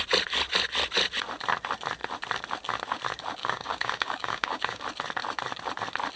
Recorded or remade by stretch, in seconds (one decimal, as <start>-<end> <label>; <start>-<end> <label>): 0.0-3.4 recorded; 3.4-4.8 remade; 4.8-6.2 recorded